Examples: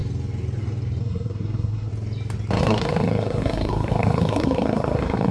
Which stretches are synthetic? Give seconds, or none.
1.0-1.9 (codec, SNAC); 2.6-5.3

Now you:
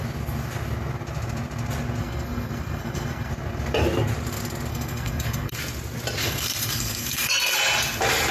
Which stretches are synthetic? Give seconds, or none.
2.0-3.3 (codec, SNAC); 4.7-5.6; 6.2-7.6